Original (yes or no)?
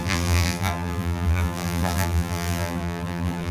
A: no